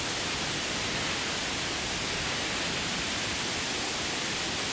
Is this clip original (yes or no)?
yes